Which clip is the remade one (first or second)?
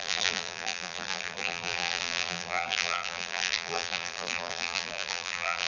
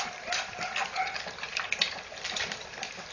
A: first